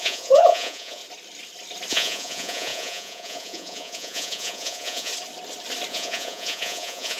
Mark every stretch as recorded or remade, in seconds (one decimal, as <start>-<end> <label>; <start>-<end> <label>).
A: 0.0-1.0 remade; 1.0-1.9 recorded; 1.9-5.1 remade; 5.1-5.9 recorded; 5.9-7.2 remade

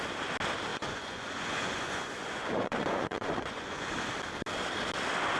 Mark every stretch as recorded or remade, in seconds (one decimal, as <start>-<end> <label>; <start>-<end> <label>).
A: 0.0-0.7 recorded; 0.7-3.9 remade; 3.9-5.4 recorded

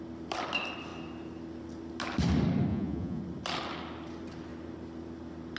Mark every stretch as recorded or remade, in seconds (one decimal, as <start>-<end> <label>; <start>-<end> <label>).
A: 0.0-2.7 recorded; 2.7-3.2 remade; 3.2-5.6 recorded

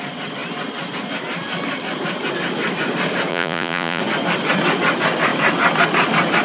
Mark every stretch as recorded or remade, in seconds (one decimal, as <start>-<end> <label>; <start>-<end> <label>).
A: 0.0-3.3 recorded; 3.3-4.0 remade; 4.0-6.4 recorded